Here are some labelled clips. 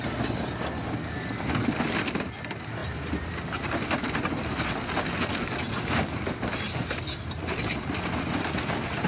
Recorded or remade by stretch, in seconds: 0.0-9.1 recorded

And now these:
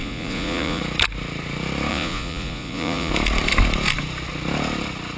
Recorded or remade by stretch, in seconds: 0.0-0.8 remade; 0.8-1.9 recorded; 1.9-3.1 remade; 3.1-5.2 recorded

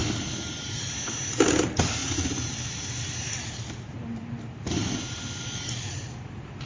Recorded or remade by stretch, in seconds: 0.0-6.7 recorded

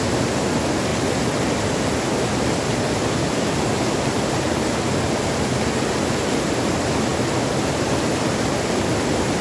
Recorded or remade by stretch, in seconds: 0.0-9.4 recorded

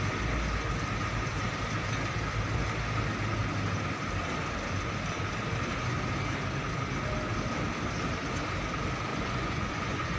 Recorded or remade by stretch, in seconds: 0.0-9.1 recorded; 9.1-10.2 remade

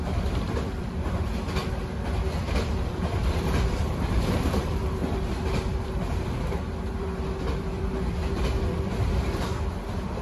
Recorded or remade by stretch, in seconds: 0.0-5.0 remade; 5.0-7.0 recorded; 7.0-10.2 remade

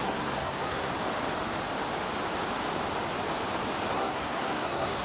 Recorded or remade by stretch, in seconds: 0.0-0.9 remade; 0.9-3.9 recorded; 3.9-5.0 remade

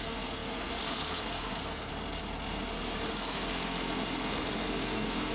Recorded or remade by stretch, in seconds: 0.0-1.9 remade; 1.9-3.1 recorded; 3.1-5.3 remade